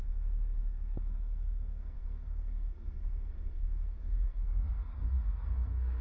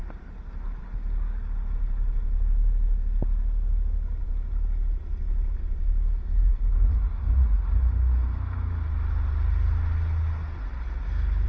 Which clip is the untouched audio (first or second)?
second